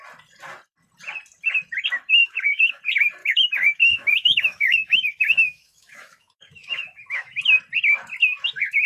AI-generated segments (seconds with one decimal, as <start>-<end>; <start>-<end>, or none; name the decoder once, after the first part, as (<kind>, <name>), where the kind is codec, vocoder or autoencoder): 2.2-2.8 (autoencoder, DAC-VAE); 3.2-7.4